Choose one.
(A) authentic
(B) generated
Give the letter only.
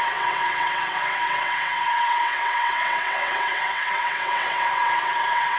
B